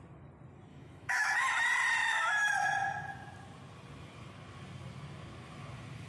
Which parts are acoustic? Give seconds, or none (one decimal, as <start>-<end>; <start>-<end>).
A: 0.0-0.7; 1.3-2.0; 2.5-6.1